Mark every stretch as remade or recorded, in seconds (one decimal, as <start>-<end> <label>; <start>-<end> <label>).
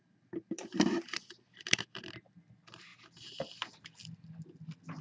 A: 0.0-5.0 recorded